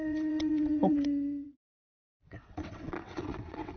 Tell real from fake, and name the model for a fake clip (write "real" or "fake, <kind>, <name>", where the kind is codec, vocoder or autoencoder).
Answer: fake, vocoder, WaveNeXt